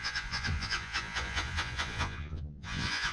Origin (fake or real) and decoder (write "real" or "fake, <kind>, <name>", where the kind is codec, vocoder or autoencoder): fake, vocoder, Vocos